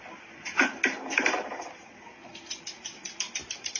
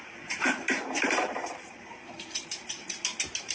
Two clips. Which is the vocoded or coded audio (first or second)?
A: second